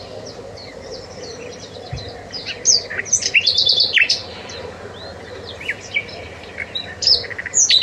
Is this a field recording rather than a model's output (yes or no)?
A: yes